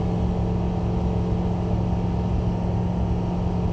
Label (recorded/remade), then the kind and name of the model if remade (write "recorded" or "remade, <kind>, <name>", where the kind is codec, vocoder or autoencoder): recorded